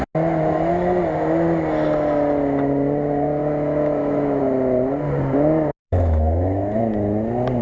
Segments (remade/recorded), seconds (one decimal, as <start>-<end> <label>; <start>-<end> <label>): 0.0-3.4 recorded; 3.4-4.4 remade; 4.4-5.8 recorded; 5.8-6.8 remade; 6.8-7.6 recorded